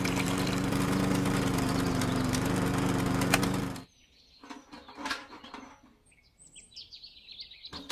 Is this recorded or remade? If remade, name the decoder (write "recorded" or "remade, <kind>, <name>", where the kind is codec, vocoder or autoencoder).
recorded